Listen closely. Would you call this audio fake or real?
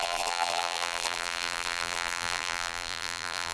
fake